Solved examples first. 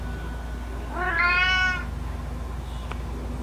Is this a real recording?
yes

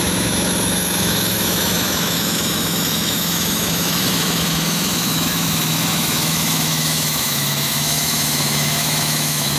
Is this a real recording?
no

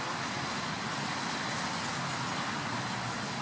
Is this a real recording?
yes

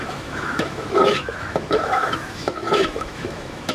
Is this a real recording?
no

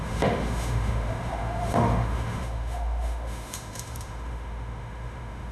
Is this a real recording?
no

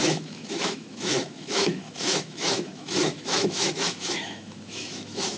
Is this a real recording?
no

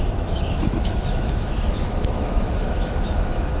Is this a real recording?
no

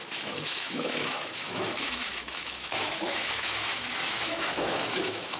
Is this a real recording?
no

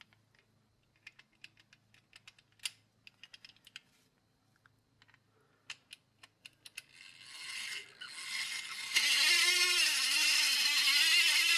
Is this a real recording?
yes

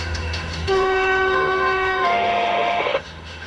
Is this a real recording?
no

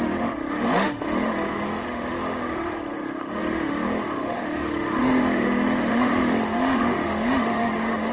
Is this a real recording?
no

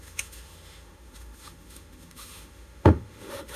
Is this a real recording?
no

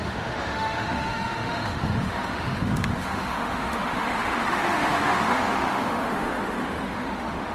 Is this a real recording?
no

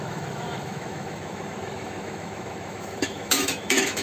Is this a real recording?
no